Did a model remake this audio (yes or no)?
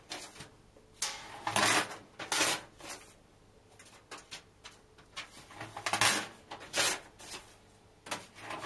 no